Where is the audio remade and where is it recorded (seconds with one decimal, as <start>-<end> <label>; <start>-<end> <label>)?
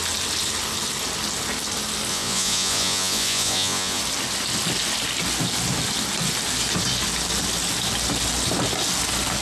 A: 0.0-2.1 recorded; 2.1-4.0 remade; 4.0-9.4 recorded